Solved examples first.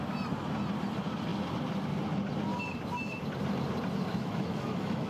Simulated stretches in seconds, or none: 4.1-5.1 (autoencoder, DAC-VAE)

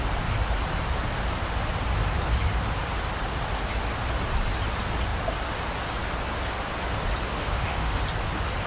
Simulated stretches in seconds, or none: 7.3-8.0 (autoencoder, DAC-VAE)

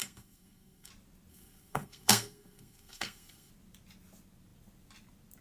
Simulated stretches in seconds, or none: 0.0-0.9 (codec, SNAC); 1.3-3.5

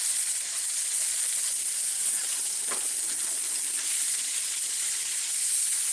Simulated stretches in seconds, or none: 0.0-1.0 (vocoder, Vocos); 1.6-2.6; 3.8-5.9

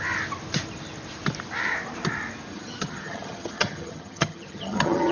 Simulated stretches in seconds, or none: 2.5-5.1 (vocoder, HiFi-GAN)

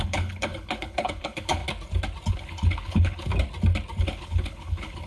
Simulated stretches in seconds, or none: 0.0-1.6 (codec, HILCodec); 2.3-3.3; 4.0-5.1